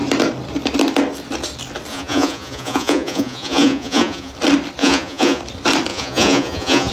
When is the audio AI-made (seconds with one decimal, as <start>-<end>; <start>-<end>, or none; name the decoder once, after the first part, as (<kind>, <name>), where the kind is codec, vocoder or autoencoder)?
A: 1.9-4.3 (vocoder, Vocos); 4.8-5.4; 5.9-6.9